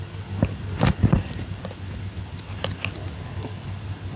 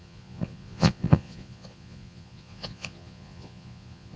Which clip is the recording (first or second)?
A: first